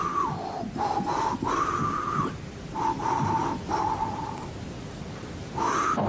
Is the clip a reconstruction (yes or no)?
no